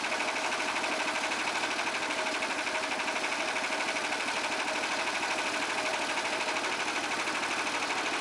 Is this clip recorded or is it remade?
recorded